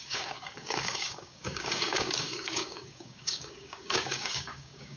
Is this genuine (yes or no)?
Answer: no